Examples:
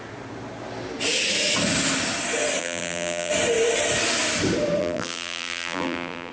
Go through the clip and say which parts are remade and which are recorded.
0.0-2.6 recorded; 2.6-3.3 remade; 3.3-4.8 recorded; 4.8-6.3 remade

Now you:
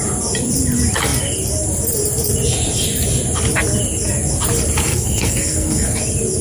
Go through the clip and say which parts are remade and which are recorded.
0.0-4.9 recorded; 4.9-5.9 remade; 5.9-6.4 recorded

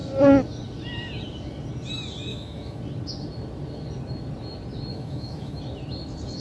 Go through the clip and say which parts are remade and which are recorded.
0.0-2.3 recorded; 2.3-2.8 remade; 2.8-4.9 recorded; 4.9-5.6 remade; 5.6-6.4 recorded

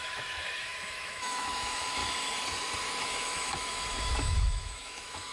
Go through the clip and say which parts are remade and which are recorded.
0.0-2.0 remade; 2.0-2.8 recorded; 2.8-5.3 remade

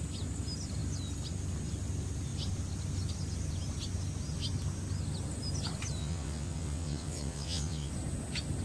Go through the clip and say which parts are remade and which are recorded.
0.0-6.0 recorded; 6.0-7.9 remade; 7.9-8.6 recorded